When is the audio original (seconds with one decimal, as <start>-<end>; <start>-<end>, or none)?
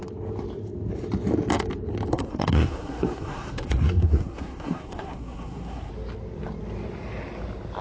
0.0-2.1; 5.9-7.8